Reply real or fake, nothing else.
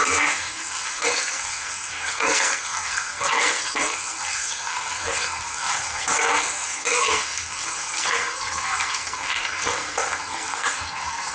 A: fake